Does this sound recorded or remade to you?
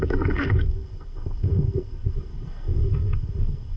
remade